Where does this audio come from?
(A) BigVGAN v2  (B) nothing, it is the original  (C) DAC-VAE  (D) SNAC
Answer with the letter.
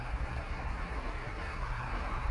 D